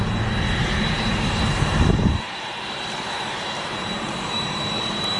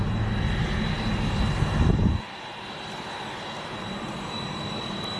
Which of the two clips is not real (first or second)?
first